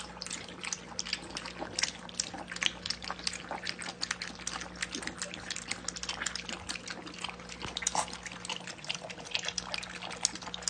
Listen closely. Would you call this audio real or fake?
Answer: real